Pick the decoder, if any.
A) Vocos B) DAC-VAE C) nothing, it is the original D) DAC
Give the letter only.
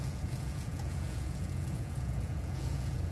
A